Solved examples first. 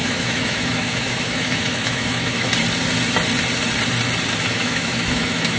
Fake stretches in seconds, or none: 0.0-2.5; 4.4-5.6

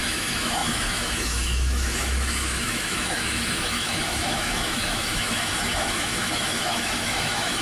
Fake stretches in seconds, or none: 0.0-7.6

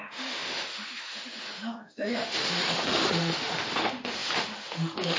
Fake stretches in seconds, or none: 0.0-5.2

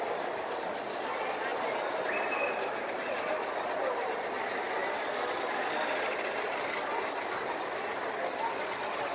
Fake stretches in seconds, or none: none

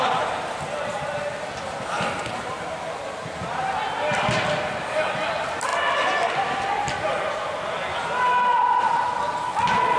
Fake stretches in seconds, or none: none

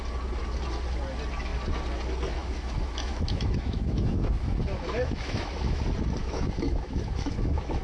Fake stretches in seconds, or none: 2.4-5.8; 6.2-7.8

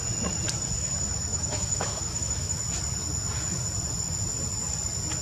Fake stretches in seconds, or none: 1.3-2.6

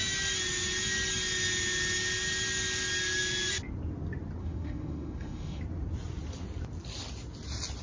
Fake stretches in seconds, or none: 4.4-5.6